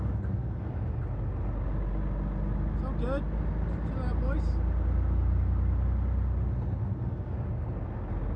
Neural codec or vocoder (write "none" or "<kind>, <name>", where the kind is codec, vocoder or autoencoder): none